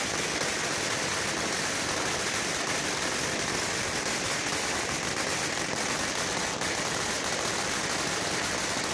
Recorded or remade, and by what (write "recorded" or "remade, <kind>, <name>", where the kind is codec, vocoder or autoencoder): recorded